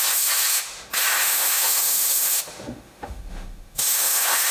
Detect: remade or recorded remade